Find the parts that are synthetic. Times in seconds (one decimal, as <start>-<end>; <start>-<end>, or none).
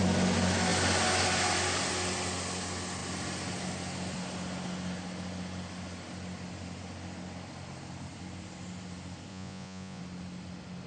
9.3-10.0